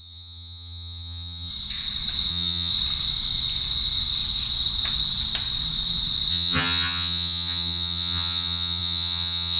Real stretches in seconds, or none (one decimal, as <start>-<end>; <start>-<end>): 1.5-2.3; 2.7-6.3